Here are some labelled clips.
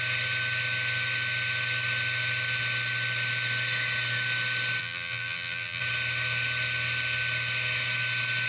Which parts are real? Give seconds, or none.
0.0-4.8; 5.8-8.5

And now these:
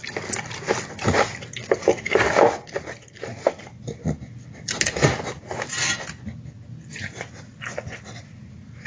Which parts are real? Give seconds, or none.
0.0-8.9

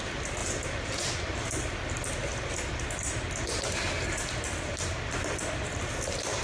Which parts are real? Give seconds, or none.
0.0-0.4; 1.5-6.4

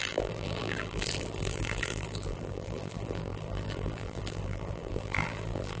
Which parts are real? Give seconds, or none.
none

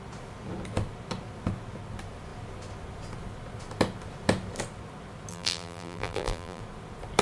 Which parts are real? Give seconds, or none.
0.0-5.3; 6.6-7.2

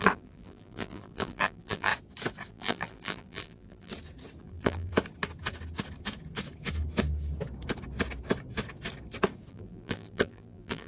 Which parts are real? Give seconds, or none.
1.9-2.5; 3.9-4.4; 4.9-9.5